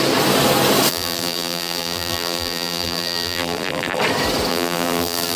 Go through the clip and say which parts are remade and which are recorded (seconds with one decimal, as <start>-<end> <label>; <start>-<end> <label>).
0.0-0.9 recorded; 0.9-4.0 remade; 4.0-4.5 recorded; 4.5-5.4 remade

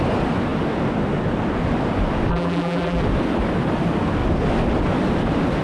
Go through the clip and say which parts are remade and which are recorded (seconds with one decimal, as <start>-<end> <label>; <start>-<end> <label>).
0.0-2.3 recorded; 2.3-3.0 remade; 3.0-5.6 recorded